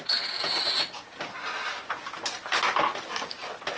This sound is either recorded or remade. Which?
recorded